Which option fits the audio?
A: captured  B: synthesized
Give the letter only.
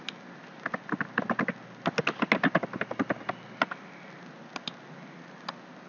A